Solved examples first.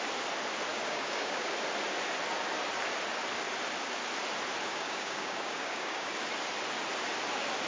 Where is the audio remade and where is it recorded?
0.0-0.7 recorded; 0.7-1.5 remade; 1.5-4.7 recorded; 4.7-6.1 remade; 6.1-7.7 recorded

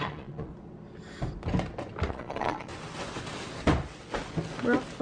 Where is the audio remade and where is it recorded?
0.0-0.5 remade; 0.5-2.1 recorded; 2.1-2.7 remade; 2.7-5.0 recorded

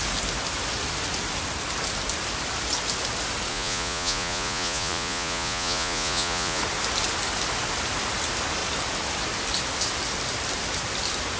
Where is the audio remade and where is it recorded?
0.0-3.5 recorded; 3.5-6.6 remade; 6.6-11.4 recorded

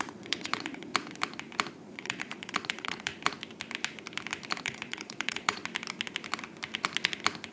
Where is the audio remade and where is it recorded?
0.0-0.9 remade; 0.9-1.8 recorded; 1.8-3.1 remade; 3.1-4.6 recorded; 4.6-5.6 remade; 5.6-7.5 recorded

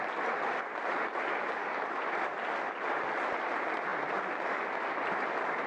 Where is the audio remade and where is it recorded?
0.0-5.7 recorded

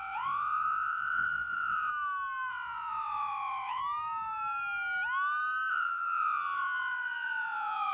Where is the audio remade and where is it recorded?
0.0-1.9 remade; 1.9-2.5 recorded; 2.5-3.8 remade; 3.8-5.7 recorded; 5.7-7.9 remade

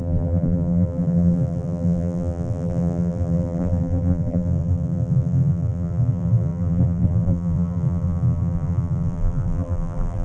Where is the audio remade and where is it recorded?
0.0-10.2 remade